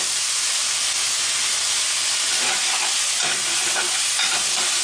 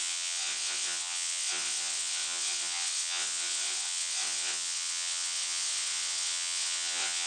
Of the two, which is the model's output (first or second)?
second